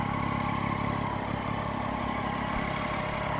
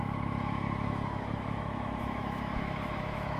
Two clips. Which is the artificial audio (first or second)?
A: second